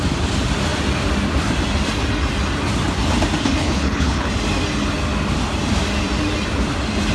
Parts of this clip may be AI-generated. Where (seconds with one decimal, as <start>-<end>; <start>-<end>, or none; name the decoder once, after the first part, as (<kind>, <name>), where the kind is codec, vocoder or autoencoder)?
3.6-4.3 (codec, HILCodec)